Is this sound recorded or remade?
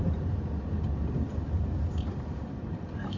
recorded